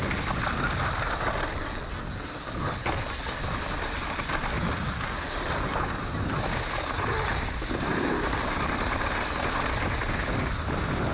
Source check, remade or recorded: recorded